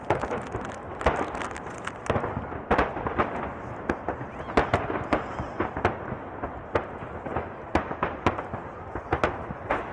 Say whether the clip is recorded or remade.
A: recorded